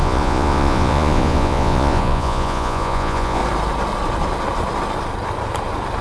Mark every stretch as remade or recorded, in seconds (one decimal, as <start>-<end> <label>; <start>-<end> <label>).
0.0-3.4 remade; 3.4-6.0 recorded